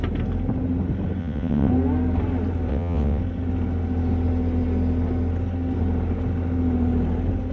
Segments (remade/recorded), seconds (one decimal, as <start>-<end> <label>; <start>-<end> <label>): 0.0-1.2 recorded; 1.2-1.7 remade; 1.7-2.7 recorded; 2.7-3.2 remade; 3.2-7.5 recorded